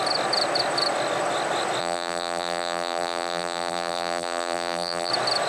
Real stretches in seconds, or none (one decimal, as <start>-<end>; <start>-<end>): 0.0-1.8; 5.1-5.5